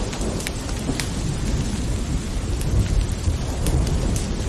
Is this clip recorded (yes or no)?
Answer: yes